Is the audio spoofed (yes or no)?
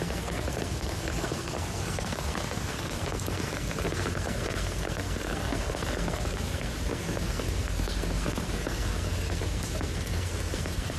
yes